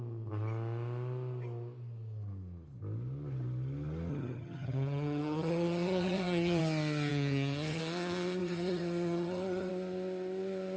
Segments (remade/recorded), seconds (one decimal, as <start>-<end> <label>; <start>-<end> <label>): 0.0-4.1 recorded; 4.1-6.6 remade; 6.6-7.1 recorded; 7.1-7.8 remade; 7.8-8.4 recorded; 8.4-9.7 remade; 9.7-10.8 recorded